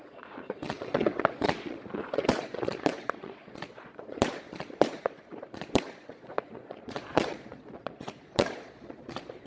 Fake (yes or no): yes